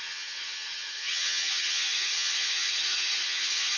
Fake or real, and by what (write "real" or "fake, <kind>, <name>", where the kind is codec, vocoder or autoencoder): fake, vocoder, HiFi-GAN